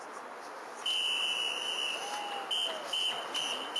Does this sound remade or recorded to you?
recorded